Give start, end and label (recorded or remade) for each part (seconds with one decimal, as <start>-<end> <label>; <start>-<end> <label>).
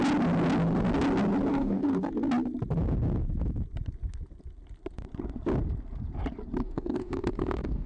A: 0.0-1.5 recorded; 1.5-2.1 remade; 2.1-6.6 recorded; 6.6-7.9 remade